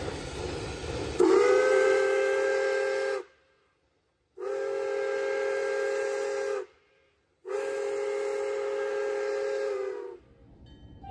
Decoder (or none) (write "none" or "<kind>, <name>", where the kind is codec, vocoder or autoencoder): none